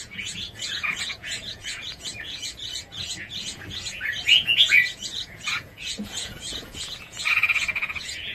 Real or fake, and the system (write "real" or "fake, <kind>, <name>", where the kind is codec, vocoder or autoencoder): fake, vocoder, Vocos